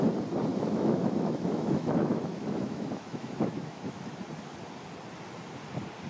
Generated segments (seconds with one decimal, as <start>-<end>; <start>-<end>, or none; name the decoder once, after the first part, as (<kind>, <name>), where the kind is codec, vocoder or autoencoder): 0.5-4.2 (autoencoder, DAC-VAE)